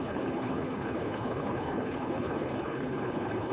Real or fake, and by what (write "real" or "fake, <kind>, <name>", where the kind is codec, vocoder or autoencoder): fake, codec, HILCodec